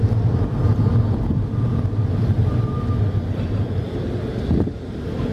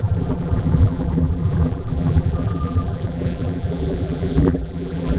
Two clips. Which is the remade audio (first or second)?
second